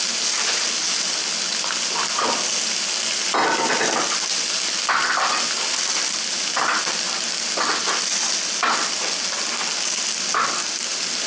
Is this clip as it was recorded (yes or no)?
yes